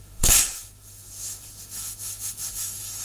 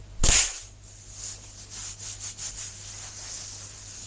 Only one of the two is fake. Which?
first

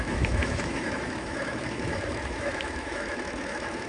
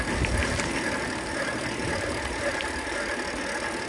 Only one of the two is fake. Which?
first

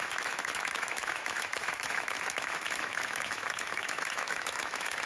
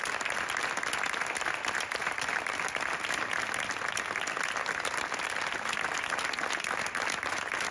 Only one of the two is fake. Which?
first